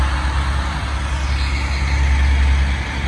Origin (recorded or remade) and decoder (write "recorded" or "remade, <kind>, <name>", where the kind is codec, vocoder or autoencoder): recorded